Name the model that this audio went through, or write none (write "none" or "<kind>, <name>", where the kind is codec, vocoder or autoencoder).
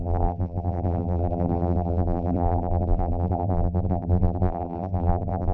vocoder, BigVGAN v2